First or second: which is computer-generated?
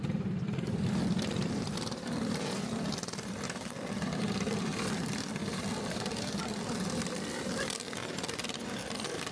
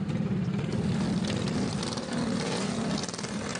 first